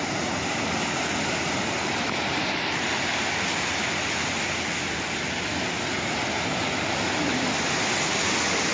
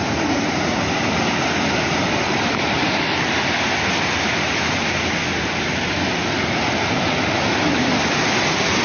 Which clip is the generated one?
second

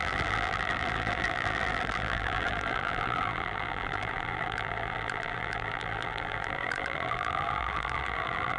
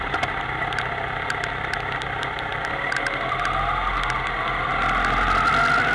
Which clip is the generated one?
first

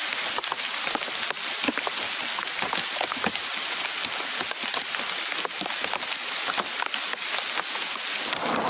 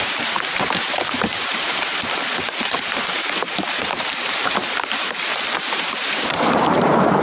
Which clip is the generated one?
second